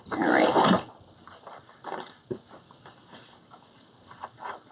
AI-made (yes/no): no